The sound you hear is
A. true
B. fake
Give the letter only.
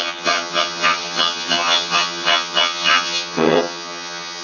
B